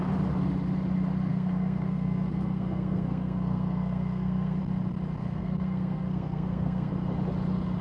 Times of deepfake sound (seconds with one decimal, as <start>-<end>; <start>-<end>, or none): 1.3-4.6; 5.2-6.9